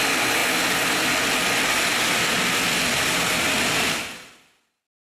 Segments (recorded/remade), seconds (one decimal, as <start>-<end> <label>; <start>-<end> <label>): 0.0-5.0 recorded